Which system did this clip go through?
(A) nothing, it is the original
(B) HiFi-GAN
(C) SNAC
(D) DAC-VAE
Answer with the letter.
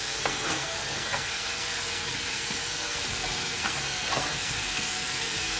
C